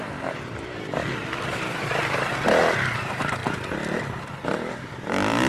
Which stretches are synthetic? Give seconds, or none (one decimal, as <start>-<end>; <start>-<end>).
none